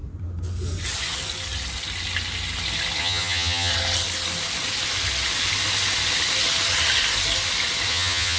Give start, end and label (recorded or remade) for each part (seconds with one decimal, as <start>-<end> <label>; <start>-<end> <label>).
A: 0.0-3.0 recorded; 3.0-3.7 remade; 3.7-7.9 recorded; 7.9-8.4 remade